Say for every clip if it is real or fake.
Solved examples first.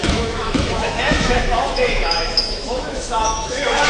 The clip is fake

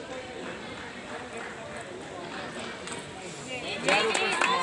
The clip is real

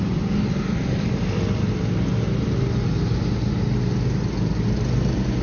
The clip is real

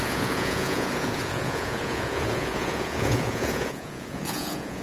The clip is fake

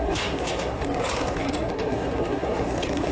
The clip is fake